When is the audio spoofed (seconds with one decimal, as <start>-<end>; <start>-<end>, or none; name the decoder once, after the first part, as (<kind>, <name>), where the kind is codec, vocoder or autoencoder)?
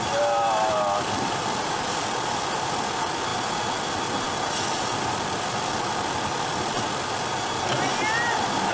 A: none